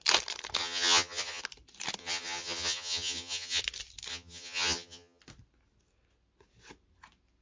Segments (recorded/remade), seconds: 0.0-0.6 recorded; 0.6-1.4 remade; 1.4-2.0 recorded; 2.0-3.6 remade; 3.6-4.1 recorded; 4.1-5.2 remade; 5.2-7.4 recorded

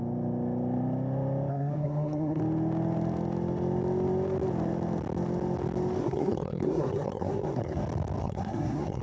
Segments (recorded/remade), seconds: 0.0-1.5 recorded; 1.5-2.4 remade; 2.4-6.0 recorded; 6.0-7.8 remade; 7.8-8.2 recorded; 8.2-9.0 remade

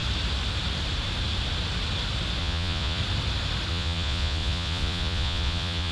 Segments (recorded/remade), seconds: 0.0-2.4 recorded; 2.4-3.0 remade; 3.0-3.7 recorded; 3.7-5.9 remade

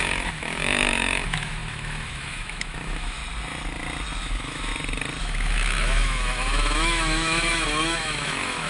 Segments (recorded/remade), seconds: 0.0-3.2 remade; 3.2-4.2 recorded; 4.2-4.7 remade; 4.7-5.2 recorded; 5.2-8.7 remade

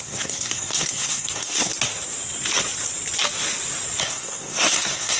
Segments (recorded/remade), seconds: 0.0-1.7 remade; 1.7-4.0 recorded; 4.0-5.2 remade

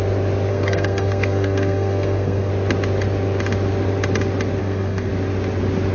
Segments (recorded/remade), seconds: 0.0-0.5 recorded; 0.5-2.5 remade; 2.5-4.6 recorded; 4.6-5.1 remade; 5.1-5.9 recorded

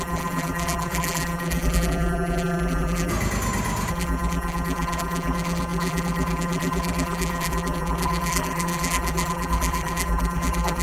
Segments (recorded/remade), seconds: 0.0-3.1 remade; 3.1-3.9 recorded; 3.9-10.8 remade

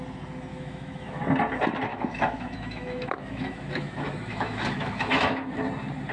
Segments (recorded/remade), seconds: 0.0-0.5 recorded; 0.5-1.2 remade; 1.2-1.9 recorded; 1.9-5.6 remade; 5.6-6.1 recorded